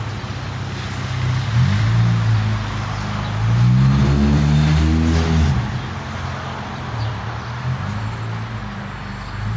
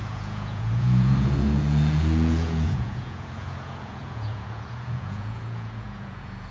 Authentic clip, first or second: first